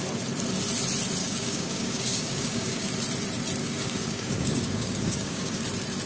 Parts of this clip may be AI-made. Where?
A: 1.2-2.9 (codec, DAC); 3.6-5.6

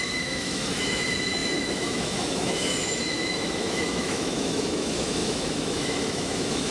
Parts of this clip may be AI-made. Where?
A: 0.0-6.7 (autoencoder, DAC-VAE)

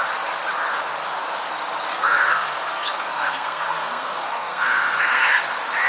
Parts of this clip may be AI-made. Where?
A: 1.9-5.4 (codec, SNAC)

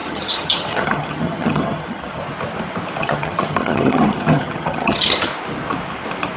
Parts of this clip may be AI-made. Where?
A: 0.0-2.2 (vocoder, HiFi-GAN); 3.0-5.3

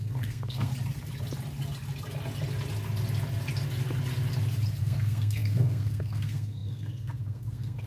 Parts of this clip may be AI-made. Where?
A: 0.0-0.7 (codec, SNAC); 4.8-7.9